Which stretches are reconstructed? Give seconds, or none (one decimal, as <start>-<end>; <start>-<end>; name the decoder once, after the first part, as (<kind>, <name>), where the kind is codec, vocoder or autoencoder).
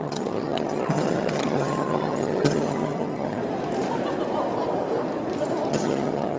0.0-3.4 (vocoder, HiFi-GAN); 5.7-6.4